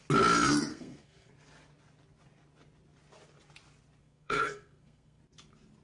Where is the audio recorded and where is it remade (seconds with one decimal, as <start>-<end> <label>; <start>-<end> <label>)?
0.0-0.7 recorded; 0.7-1.3 remade; 1.3-4.0 recorded; 4.0-5.2 remade; 5.2-5.8 recorded